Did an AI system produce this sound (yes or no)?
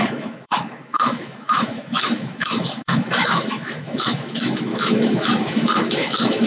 yes